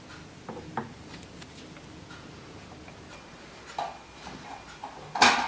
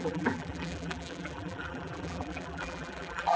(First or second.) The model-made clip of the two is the second